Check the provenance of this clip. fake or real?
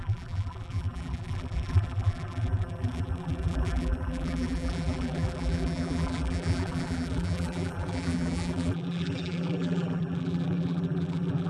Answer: fake